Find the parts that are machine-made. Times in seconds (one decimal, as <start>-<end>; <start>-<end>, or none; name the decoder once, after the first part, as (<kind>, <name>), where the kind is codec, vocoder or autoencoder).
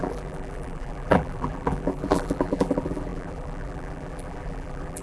0.0-5.0 (vocoder, BigVGAN v2)